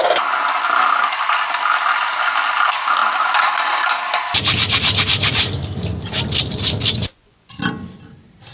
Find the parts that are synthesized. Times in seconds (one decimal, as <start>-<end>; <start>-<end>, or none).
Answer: 7.0-7.6